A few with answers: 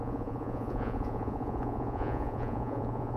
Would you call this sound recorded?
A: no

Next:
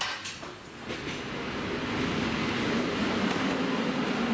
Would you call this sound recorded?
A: yes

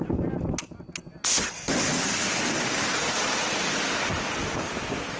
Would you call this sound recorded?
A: yes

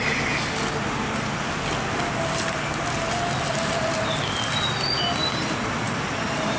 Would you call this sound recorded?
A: yes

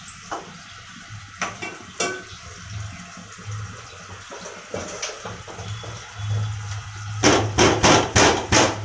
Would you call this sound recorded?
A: yes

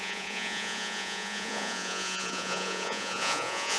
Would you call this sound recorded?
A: no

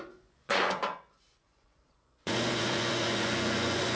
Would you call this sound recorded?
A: no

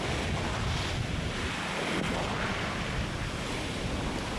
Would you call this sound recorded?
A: yes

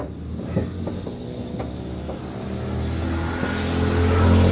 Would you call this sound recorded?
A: yes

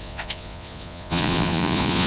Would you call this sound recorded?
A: no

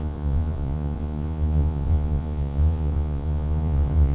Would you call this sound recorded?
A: no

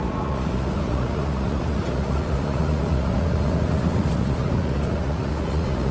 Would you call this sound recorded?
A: no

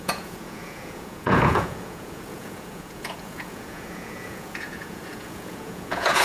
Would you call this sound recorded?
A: no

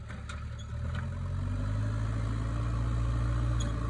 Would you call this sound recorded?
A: yes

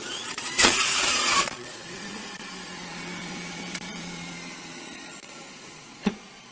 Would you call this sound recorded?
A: no